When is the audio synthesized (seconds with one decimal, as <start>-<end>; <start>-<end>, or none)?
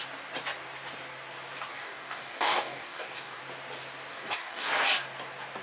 1.7-3.4; 4.1-4.7